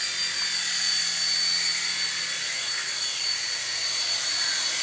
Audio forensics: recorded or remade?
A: recorded